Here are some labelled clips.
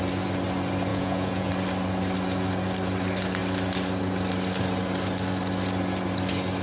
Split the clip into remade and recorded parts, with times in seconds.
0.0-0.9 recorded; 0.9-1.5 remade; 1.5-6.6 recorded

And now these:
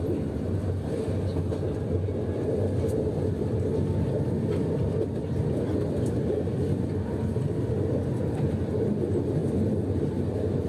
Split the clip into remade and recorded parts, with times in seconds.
0.0-10.7 recorded

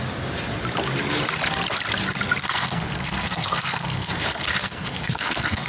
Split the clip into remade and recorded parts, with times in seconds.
0.0-2.4 recorded; 2.4-5.7 remade

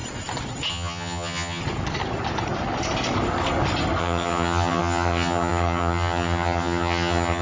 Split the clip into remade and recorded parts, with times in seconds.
0.0-0.7 recorded; 0.7-1.6 remade; 1.6-4.0 recorded; 4.0-7.4 remade

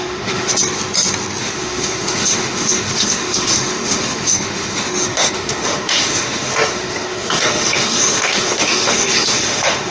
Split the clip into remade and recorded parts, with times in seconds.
0.0-0.5 remade; 0.5-1.4 recorded; 1.4-9.9 remade